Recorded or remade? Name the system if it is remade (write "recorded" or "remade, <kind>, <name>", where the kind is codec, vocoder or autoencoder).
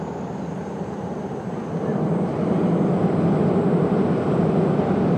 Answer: recorded